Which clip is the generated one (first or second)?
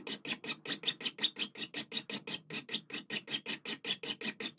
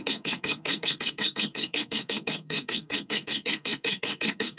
second